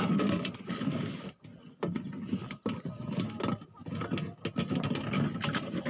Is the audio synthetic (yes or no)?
no